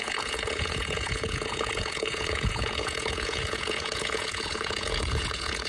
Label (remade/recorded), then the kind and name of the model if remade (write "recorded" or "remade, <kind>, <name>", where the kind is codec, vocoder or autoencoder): remade, vocoder, Vocos